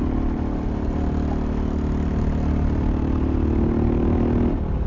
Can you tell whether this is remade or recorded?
recorded